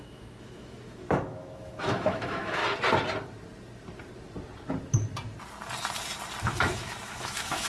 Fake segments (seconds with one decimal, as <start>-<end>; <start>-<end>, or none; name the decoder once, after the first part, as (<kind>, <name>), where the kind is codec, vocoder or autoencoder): 0.0-2.6 (autoencoder, DAC-VAE); 6.4-7.7

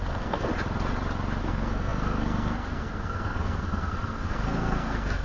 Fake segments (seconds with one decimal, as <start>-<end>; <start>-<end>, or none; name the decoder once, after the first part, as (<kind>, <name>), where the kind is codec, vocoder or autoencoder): 0.0-0.5 (codec, SNAC); 1.4-5.2

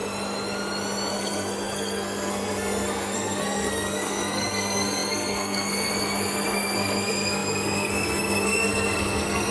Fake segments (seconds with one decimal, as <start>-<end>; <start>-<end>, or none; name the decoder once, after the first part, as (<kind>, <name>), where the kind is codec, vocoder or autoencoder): 1.1-9.5 (codec, SNAC)

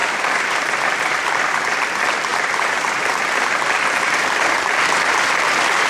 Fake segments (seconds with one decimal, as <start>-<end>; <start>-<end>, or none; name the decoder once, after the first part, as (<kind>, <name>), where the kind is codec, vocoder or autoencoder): 0.0-5.9 (vocoder, BigVGAN v2)

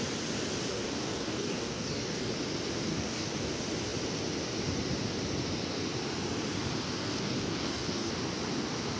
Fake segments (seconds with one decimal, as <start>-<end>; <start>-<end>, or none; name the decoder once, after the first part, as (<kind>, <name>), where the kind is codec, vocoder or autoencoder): 0.7-2.3 (codec, DAC); 2.9-3.5; 7.0-8.1

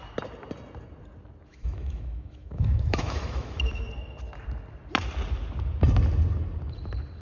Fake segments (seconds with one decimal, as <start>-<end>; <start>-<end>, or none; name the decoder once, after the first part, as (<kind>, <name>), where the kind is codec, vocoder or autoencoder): 1.5-3.8 (autoencoder, DAC-VAE)

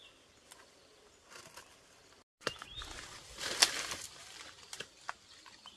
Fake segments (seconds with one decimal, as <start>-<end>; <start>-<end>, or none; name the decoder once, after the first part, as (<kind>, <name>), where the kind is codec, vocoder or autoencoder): none

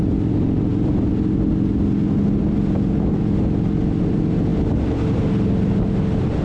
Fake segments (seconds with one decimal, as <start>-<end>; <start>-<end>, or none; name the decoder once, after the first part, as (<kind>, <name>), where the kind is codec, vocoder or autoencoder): 4.5-5.2 (vocoder, BigVGAN v2)